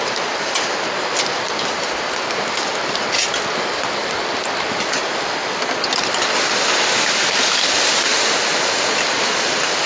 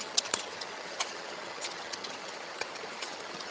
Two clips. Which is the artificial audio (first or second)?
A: second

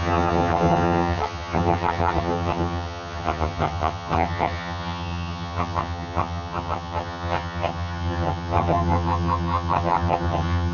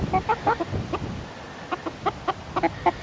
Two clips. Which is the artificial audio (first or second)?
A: first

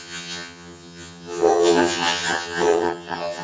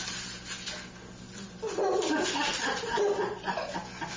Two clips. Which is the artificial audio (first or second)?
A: first